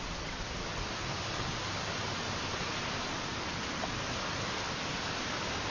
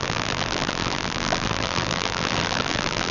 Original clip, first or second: first